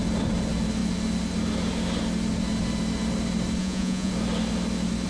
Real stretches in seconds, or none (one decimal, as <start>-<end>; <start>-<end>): 0.0-3.6; 4.1-5.1

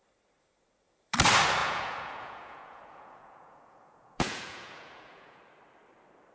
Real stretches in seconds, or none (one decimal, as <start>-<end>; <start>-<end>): 0.0-1.6; 5.4-6.3

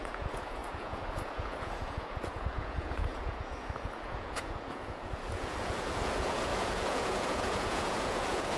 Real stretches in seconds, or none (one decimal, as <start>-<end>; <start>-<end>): none

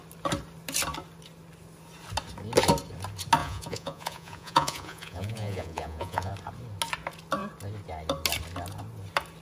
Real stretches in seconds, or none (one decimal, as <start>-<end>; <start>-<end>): 0.0-3.4; 6.3-9.4

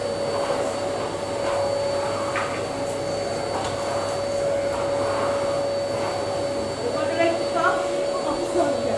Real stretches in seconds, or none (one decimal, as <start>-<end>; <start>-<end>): 0.0-9.0